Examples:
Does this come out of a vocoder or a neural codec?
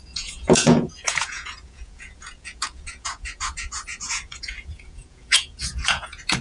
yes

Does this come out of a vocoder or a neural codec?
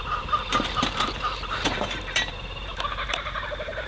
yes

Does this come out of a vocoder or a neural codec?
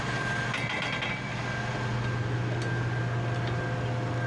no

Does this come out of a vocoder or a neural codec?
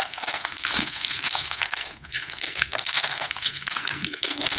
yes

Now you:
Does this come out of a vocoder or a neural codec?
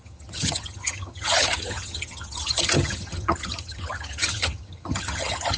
yes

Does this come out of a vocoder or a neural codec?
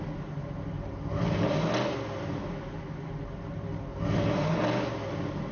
no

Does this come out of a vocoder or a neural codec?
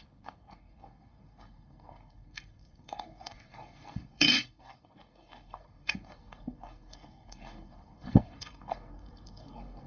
yes